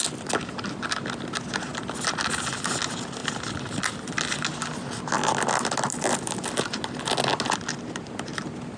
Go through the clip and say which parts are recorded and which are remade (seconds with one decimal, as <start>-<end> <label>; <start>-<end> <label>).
0.0-8.8 recorded